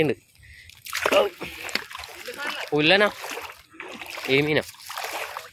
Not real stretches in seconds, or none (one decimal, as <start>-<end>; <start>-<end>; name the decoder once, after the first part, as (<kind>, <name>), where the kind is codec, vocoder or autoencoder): none